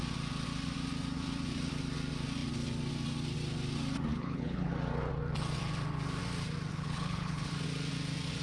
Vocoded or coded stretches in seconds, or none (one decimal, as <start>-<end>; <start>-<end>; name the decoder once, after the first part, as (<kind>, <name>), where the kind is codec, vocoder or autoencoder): 4.1-4.7 (codec, HILCodec); 6.7-7.5